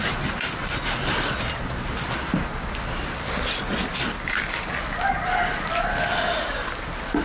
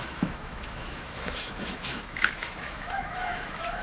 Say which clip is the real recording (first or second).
first